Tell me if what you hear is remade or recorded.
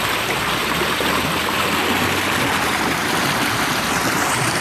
recorded